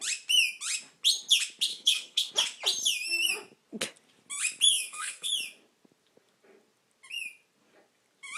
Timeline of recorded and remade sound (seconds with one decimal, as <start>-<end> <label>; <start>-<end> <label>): 0.0-1.7 recorded; 1.7-2.3 remade; 2.3-4.7 recorded; 4.7-5.3 remade; 5.3-8.4 recorded